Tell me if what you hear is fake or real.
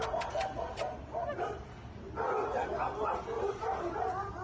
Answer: real